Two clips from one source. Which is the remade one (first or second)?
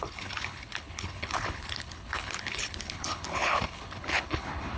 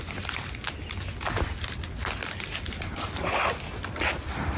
first